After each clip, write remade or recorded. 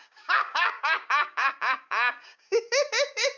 remade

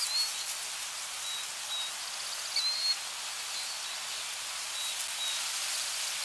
recorded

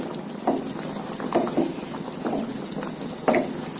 recorded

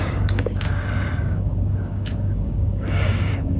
remade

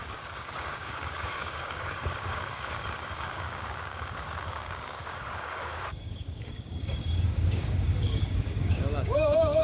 remade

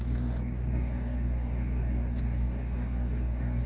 remade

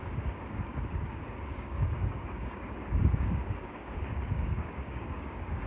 remade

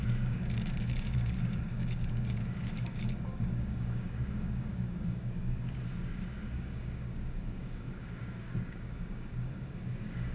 remade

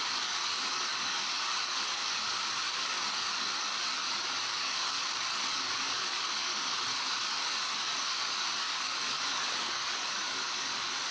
remade